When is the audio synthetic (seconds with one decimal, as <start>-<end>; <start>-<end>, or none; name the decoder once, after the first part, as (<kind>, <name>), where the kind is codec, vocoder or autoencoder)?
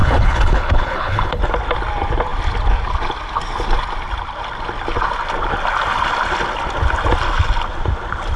0.0-1.4 (codec, HILCodec)